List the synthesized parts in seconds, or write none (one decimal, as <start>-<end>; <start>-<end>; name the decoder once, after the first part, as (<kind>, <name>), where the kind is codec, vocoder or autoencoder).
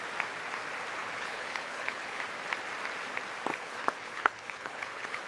1.0-2.2 (codec, HILCodec); 3.5-5.3